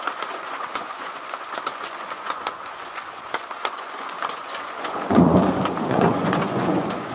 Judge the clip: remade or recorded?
remade